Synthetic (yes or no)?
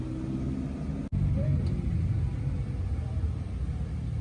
no